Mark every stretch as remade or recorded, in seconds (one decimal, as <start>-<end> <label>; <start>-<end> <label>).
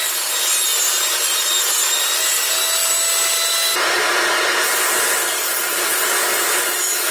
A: 0.0-7.1 recorded